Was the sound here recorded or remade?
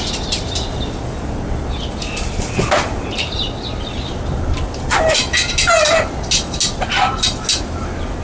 recorded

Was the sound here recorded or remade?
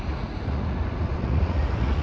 remade